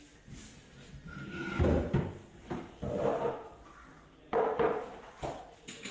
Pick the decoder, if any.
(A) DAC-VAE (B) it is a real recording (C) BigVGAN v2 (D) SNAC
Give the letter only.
B